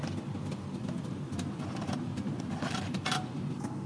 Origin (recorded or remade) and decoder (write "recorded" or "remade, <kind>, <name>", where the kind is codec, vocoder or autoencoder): recorded